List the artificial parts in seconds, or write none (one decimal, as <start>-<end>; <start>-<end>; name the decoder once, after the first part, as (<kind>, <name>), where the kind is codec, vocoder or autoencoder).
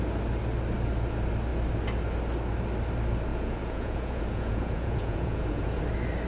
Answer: 3.3-5.8 (vocoder, Vocos)